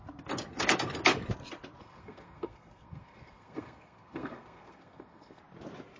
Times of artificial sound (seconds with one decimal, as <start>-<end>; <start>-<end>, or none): 1.8-5.4